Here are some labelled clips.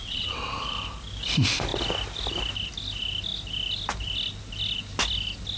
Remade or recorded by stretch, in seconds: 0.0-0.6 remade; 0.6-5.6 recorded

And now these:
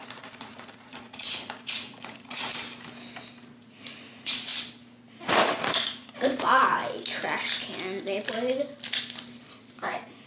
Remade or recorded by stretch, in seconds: 0.0-2.5 remade; 2.5-3.6 recorded; 3.6-4.5 remade; 4.5-5.1 recorded; 5.1-6.8 remade; 6.8-9.5 recorded; 9.5-10.3 remade

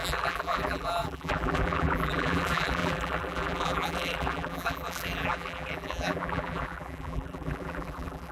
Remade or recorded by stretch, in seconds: 0.0-8.3 remade

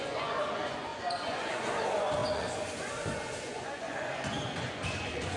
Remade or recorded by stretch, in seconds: 0.0-5.4 remade

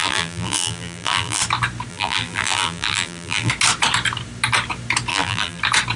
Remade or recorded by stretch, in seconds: 0.0-1.4 remade; 1.4-1.9 recorded; 1.9-3.5 remade; 3.5-5.1 recorded; 5.1-5.6 remade; 5.6-6.0 recorded

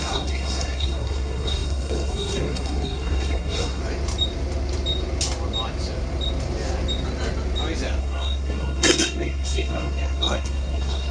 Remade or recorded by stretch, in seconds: 0.0-3.8 remade; 3.8-8.0 recorded; 8.0-11.1 remade